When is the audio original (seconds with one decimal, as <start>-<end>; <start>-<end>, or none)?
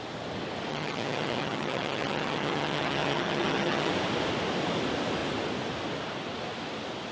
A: 0.0-0.7; 3.9-7.1